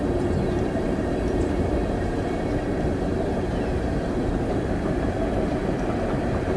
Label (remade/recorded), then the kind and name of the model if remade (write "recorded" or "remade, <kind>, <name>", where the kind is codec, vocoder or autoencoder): remade, vocoder, BigVGAN v2